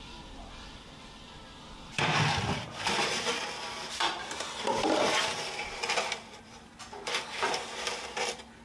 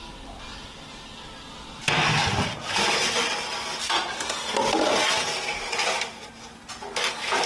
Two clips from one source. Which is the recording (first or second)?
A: second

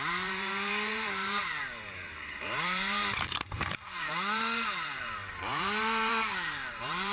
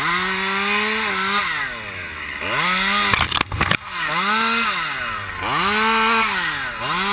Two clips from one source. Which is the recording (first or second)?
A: second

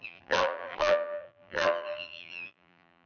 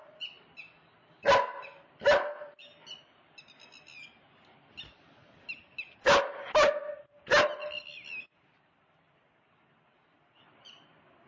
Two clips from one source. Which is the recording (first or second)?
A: second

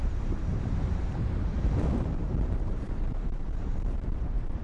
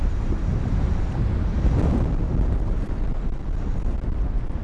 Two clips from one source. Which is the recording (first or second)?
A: second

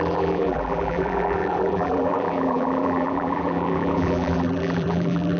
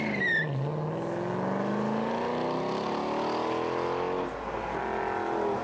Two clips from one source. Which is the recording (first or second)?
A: second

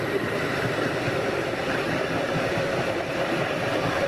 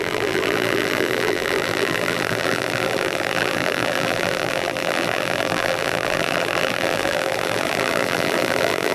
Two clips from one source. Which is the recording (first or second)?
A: first